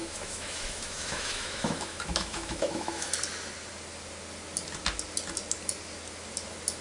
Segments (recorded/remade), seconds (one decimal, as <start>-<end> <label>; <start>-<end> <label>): 0.0-3.1 remade; 3.1-6.8 recorded